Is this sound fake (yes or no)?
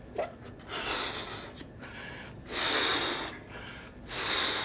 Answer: no